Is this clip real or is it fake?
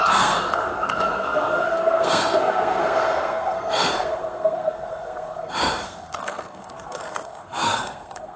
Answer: fake